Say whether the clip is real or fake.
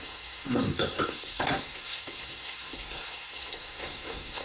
fake